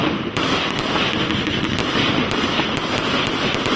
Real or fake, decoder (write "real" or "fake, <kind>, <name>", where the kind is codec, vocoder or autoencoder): real